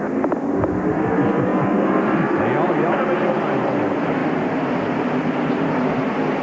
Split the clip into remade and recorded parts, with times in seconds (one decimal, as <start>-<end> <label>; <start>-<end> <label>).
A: 0.0-6.4 recorded